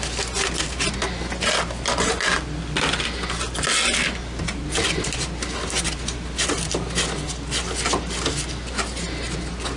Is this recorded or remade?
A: recorded